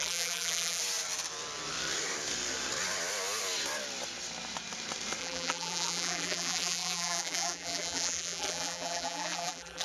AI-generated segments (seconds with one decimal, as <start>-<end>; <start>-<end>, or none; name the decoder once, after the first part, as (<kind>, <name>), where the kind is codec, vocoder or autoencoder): 0.0-0.8 (vocoder, BigVGAN v2); 5.2-9.8